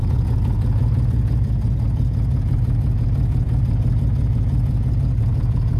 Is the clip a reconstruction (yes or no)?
yes